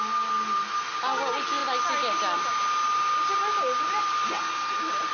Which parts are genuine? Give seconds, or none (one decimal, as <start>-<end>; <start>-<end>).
0.0-5.1